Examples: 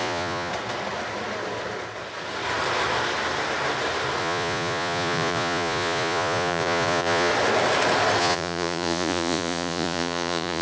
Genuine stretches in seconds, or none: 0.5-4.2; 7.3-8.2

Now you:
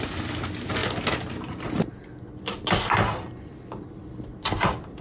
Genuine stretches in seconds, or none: 0.0-5.0

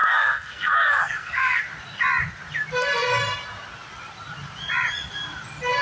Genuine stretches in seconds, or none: 1.6-5.8